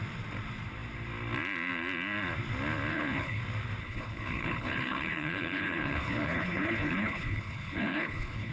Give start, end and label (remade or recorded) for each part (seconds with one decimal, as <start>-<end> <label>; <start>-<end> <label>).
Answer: 0.0-2.9 recorded; 2.9-3.4 remade; 3.4-3.8 recorded; 3.8-8.5 remade